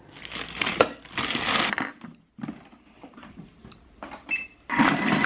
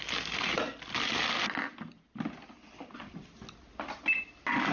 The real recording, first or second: second